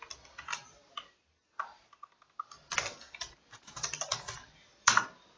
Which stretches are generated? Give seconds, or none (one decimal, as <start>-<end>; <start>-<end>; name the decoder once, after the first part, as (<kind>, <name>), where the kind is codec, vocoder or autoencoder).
none